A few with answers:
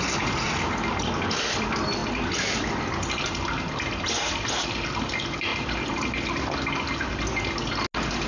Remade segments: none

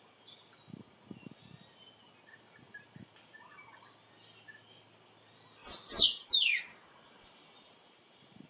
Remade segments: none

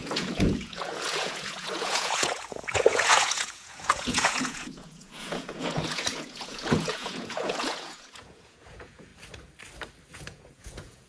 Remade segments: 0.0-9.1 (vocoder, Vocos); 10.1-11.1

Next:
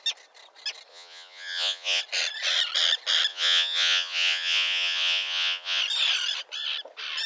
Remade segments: 0.9-2.0 (vocoder, Vocos); 3.3-5.8

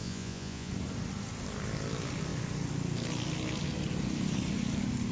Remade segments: 0.0-0.7 (vocoder, Vocos)